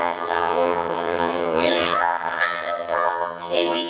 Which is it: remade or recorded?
remade